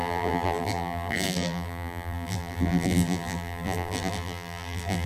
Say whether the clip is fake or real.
fake